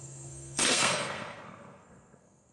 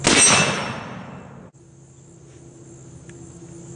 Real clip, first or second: second